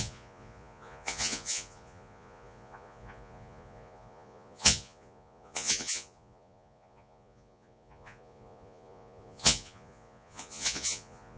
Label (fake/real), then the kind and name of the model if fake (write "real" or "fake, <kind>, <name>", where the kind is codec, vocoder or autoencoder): fake, vocoder, Vocos